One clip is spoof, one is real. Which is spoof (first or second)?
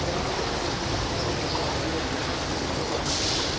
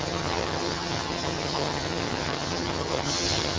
second